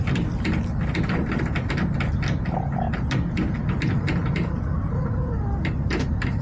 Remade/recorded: recorded